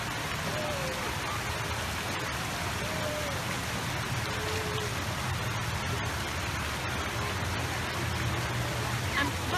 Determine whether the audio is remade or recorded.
recorded